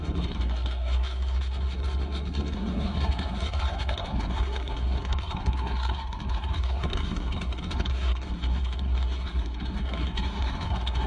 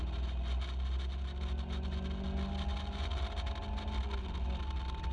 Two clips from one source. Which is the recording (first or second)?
second